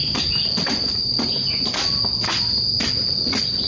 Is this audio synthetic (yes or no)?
no